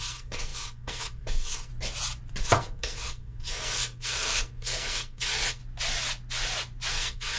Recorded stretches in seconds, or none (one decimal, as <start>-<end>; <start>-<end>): 1.7-2.4; 5.6-6.9